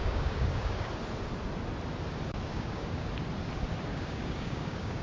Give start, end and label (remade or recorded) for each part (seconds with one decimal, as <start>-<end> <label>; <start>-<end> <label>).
0.0-0.9 remade; 0.9-2.5 recorded; 2.5-3.1 remade; 3.1-3.9 recorded; 3.9-5.0 remade